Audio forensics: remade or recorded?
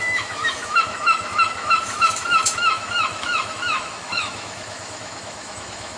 remade